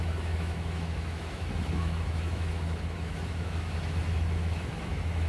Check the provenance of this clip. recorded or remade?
remade